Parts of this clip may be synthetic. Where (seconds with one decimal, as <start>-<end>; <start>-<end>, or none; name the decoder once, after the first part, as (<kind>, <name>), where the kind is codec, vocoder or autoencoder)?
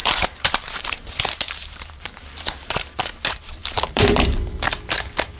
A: 0.0-1.0 (vocoder, BigVGAN v2); 1.6-3.0; 3.6-4.7